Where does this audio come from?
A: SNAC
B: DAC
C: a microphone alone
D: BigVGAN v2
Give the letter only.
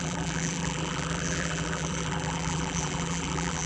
D